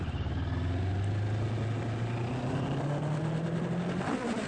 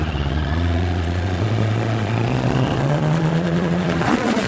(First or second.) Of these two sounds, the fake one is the second